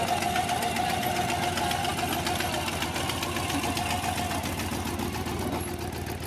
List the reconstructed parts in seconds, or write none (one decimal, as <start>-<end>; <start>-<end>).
none